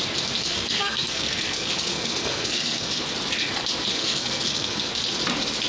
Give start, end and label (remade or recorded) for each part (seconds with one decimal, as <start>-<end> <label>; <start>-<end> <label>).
0.0-0.4 recorded; 0.4-3.0 remade; 3.0-3.9 recorded; 3.9-4.9 remade; 4.9-5.7 recorded